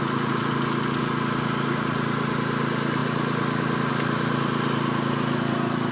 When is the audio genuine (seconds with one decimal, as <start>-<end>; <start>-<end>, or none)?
0.0-5.9